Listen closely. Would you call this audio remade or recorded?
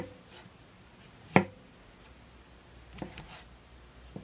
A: recorded